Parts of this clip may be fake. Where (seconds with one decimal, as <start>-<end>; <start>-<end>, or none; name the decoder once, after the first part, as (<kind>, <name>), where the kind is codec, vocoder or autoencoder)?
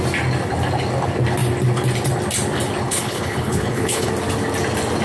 2.8-4.1 (codec, HILCodec)